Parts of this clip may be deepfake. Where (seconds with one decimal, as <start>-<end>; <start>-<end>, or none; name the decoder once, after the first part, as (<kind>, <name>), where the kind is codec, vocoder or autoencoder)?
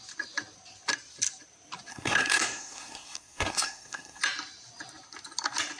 1.9-4.2 (codec, SNAC)